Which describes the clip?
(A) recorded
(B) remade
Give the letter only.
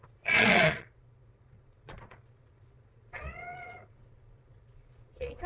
B